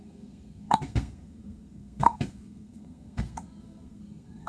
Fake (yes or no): yes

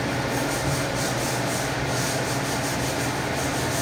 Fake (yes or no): no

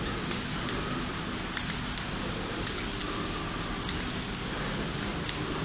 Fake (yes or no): no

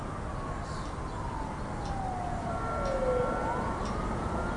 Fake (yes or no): no